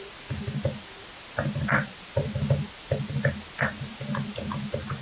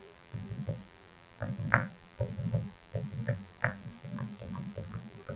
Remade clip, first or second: second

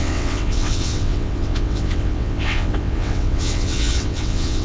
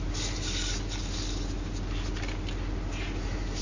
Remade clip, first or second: first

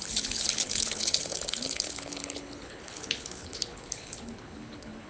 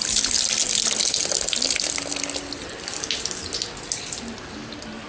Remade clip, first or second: first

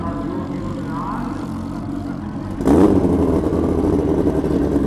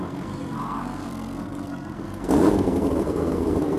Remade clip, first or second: second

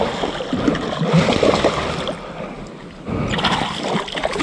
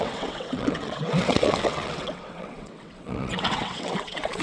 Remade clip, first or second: second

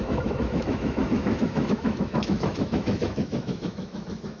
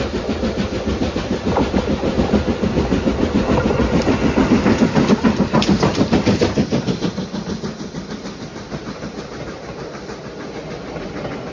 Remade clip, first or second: first